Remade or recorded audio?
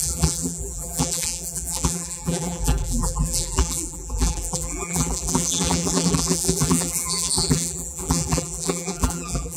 remade